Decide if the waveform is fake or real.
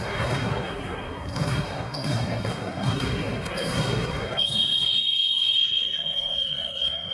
fake